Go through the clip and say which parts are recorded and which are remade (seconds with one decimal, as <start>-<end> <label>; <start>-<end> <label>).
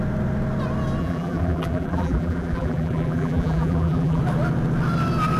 0.0-1.0 recorded; 1.0-4.2 remade; 4.2-5.4 recorded